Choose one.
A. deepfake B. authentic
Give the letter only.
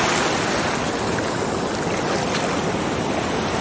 B